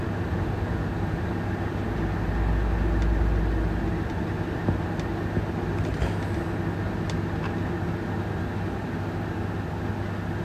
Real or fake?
real